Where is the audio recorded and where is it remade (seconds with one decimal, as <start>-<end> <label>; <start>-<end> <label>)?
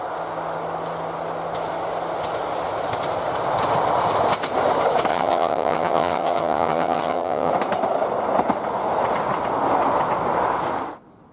0.0-5.1 recorded; 5.1-7.5 remade; 7.5-11.3 recorded